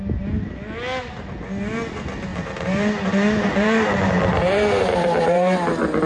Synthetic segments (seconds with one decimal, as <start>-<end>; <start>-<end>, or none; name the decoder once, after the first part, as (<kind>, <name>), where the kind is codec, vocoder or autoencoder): 2.3-6.1 (vocoder, BigVGAN v2)